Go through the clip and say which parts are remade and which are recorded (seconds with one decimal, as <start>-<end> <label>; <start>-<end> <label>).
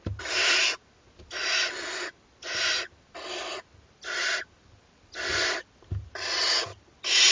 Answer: 0.0-7.3 recorded